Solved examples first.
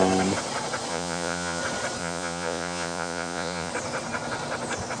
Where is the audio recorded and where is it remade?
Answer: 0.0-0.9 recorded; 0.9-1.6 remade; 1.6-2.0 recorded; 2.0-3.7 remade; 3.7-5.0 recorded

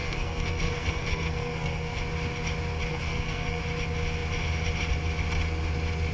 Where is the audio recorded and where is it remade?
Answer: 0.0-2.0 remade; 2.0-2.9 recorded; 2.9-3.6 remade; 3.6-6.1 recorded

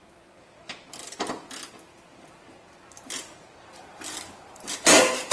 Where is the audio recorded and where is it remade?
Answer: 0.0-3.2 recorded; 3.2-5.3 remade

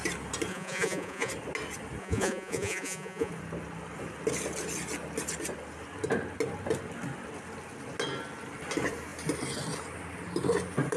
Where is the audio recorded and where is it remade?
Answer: 0.0-0.5 recorded; 0.5-1.3 remade; 1.3-2.0 recorded; 2.0-3.3 remade; 3.3-11.0 recorded

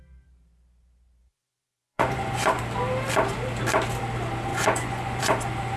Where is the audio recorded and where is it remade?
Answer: 0.0-1.2 recorded; 1.2-2.6 remade; 2.6-4.5 recorded; 4.5-5.2 remade; 5.2-5.8 recorded

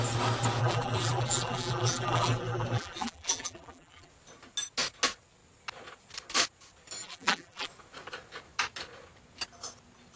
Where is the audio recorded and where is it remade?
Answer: 0.0-0.6 recorded; 0.6-4.1 remade; 4.1-7.0 recorded; 7.0-7.7 remade; 7.7-10.2 recorded